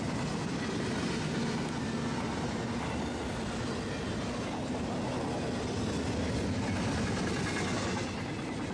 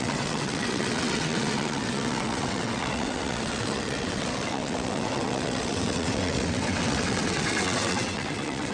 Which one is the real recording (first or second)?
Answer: first